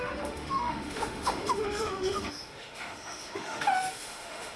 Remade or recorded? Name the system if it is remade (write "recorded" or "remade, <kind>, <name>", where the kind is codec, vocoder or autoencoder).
remade, autoencoder, DAC-VAE